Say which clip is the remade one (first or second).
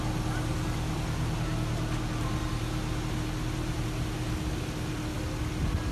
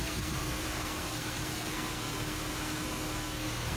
second